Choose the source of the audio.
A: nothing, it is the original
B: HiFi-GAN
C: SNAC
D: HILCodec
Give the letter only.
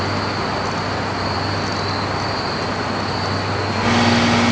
A